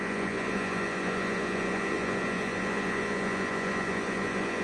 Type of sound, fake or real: fake